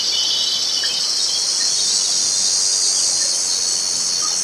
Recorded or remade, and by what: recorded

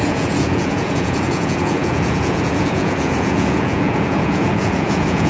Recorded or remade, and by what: remade, vocoder, Vocos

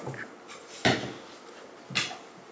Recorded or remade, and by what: recorded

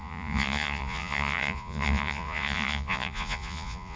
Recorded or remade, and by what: remade, vocoder, Vocos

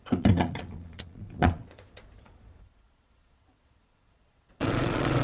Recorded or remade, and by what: remade, vocoder, Vocos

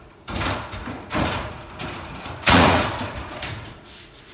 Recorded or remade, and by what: remade, vocoder, Vocos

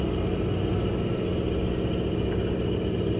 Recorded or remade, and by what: recorded